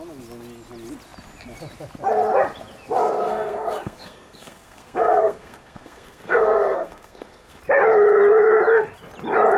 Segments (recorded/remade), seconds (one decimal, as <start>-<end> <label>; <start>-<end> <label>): 0.0-3.0 recorded; 3.0-7.6 remade; 7.6-9.6 recorded